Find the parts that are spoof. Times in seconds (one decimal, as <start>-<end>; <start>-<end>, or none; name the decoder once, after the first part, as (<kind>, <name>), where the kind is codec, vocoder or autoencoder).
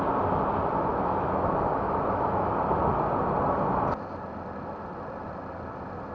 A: 0.9-2.5 (autoencoder, DAC-VAE)